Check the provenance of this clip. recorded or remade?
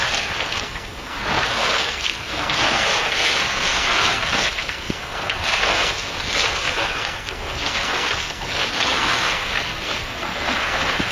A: remade